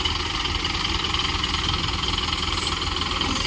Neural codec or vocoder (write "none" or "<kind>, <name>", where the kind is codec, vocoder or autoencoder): none